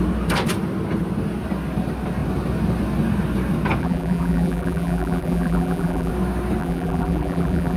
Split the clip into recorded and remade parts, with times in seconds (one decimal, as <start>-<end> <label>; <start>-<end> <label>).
0.0-3.8 recorded; 3.8-6.1 remade; 6.1-6.6 recorded; 6.6-7.8 remade